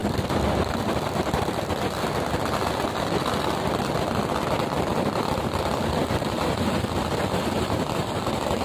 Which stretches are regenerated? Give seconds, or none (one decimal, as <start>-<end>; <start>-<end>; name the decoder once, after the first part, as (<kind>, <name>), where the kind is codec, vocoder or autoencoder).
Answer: 4.9-8.2 (vocoder, BigVGAN v2)